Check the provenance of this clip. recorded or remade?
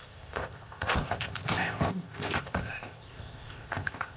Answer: remade